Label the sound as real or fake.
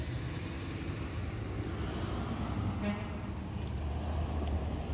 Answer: real